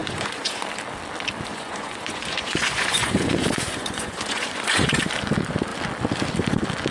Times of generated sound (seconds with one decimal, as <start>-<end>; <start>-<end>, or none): 0.0-0.6; 1.5-5.0